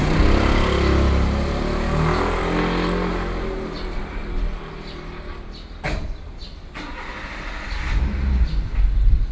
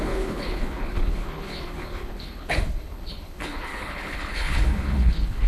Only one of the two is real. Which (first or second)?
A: first